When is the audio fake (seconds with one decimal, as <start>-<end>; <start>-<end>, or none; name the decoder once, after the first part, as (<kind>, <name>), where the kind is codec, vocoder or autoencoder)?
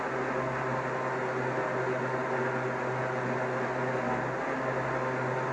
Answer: none